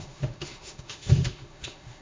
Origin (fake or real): fake